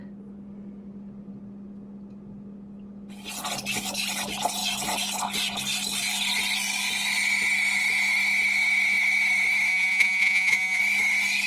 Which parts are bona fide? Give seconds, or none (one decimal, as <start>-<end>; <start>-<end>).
0.0-9.7; 10.8-11.5